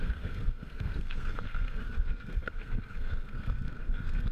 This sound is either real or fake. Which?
fake